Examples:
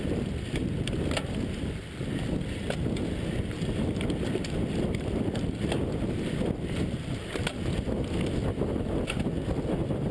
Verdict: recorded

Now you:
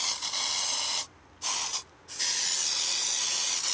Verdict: recorded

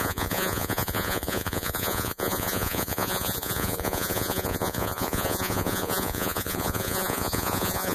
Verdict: remade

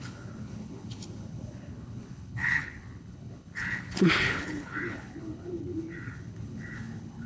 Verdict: remade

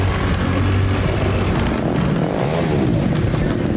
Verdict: recorded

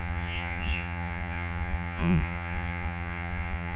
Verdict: remade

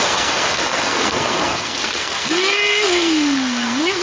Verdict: remade